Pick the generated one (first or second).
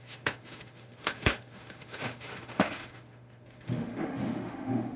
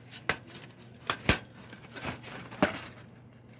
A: first